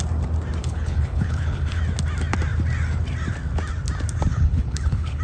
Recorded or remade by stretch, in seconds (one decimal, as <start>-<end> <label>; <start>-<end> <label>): 0.0-0.6 recorded; 0.6-1.8 remade; 1.8-4.3 recorded; 4.3-5.2 remade

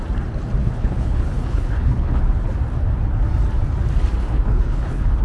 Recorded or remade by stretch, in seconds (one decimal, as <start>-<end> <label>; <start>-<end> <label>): 0.0-0.6 recorded; 0.6-2.2 remade; 2.2-4.2 recorded; 4.2-5.2 remade

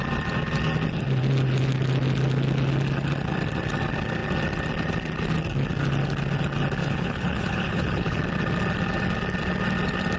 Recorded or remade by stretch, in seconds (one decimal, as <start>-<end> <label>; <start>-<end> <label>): 0.0-6.8 recorded; 6.8-8.2 remade; 8.2-10.2 recorded

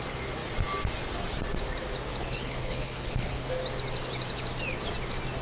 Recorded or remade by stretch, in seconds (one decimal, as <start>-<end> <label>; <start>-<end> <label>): 0.0-2.1 recorded; 2.1-3.5 remade; 3.5-5.4 recorded

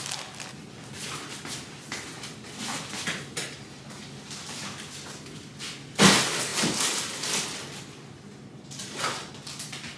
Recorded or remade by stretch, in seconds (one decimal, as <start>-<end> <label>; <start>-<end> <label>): 0.0-10.0 recorded

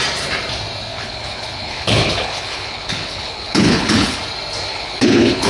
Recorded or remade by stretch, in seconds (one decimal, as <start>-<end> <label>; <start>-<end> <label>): 0.0-0.9 recorded; 0.9-4.2 remade; 4.2-4.7 recorded; 4.7-5.5 remade